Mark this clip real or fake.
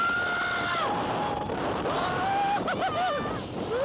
real